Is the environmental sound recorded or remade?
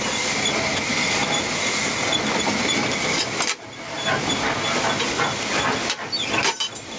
recorded